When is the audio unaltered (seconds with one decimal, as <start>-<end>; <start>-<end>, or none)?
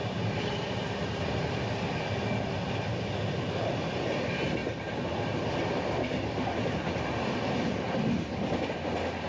0.0-9.3